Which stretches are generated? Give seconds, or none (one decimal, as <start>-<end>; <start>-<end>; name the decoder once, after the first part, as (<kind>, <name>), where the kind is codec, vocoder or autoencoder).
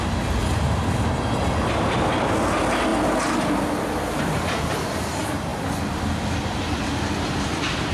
2.9-4.2 (vocoder, BigVGAN v2)